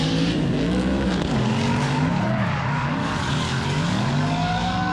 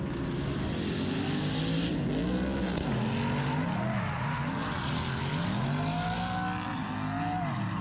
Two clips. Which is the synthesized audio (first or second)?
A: first